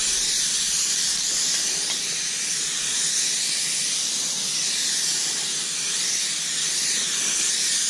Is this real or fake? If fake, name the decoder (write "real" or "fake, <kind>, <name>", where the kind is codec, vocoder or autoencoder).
real